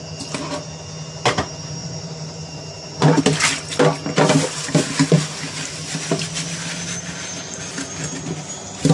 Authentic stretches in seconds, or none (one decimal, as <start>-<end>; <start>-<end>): 0.0-1.8; 3.2-8.9